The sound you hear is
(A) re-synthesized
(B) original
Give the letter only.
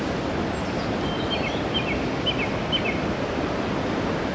B